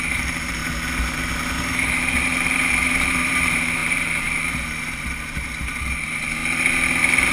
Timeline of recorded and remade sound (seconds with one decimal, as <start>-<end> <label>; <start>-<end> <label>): 0.0-0.6 remade; 0.6-1.2 recorded; 1.2-6.4 remade; 6.4-7.3 recorded

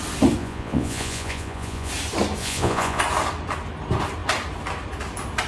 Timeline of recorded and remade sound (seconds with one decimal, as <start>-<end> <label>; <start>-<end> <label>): 0.0-0.4 recorded; 0.4-1.9 remade; 1.9-2.4 recorded; 2.4-3.0 remade; 3.0-5.5 recorded

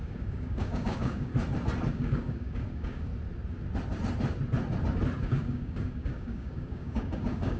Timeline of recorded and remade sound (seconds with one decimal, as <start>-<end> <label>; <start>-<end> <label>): 0.0-1.3 remade; 1.3-1.9 recorded; 1.9-3.1 remade; 3.1-5.2 recorded; 5.2-7.6 remade

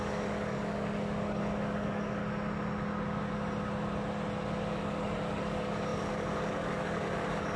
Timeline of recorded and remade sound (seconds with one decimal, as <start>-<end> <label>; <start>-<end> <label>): 0.0-2.2 remade; 2.2-4.7 recorded; 4.7-7.6 remade